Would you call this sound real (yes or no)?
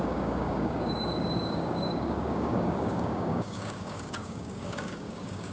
no